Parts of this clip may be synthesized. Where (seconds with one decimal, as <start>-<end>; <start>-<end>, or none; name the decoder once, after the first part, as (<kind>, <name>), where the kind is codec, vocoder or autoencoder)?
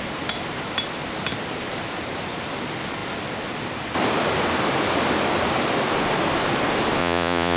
7.0-7.6 (vocoder, Vocos)